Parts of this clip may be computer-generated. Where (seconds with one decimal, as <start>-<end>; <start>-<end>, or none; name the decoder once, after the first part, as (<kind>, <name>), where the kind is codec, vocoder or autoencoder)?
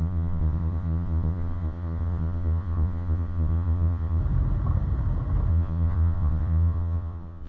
0.0-4.2 (vocoder, Vocos); 5.5-7.5